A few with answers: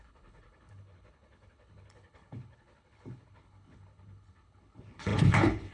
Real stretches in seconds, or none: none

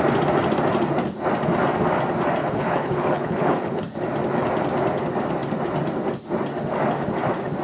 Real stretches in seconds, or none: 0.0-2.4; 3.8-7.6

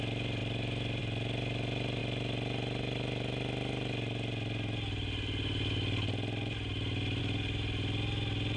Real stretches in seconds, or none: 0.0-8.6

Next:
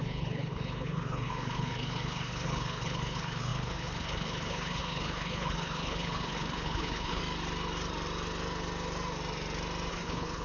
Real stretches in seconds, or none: 7.2-9.9

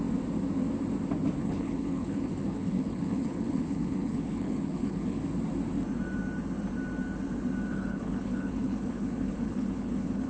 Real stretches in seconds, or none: 0.0-1.4; 5.2-7.7

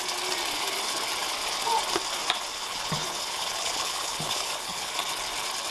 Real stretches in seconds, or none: 0.0-2.5; 4.9-5.7